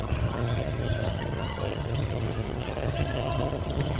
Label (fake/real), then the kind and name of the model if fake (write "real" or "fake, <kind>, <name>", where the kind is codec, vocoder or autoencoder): fake, vocoder, HiFi-GAN